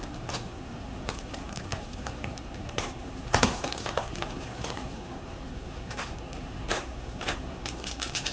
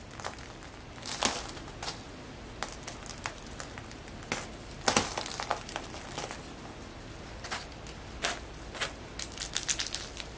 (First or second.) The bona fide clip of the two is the second